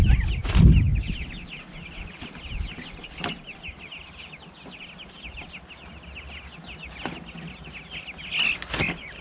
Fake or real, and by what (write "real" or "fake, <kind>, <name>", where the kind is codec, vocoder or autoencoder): real